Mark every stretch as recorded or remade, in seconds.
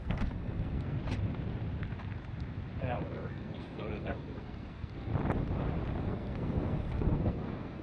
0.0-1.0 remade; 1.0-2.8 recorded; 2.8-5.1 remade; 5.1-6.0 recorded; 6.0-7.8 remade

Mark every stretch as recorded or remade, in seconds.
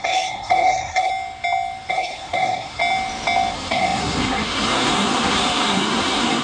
0.0-1.1 remade; 1.1-1.9 recorded; 1.9-2.8 remade; 2.8-3.5 recorded; 3.5-6.4 remade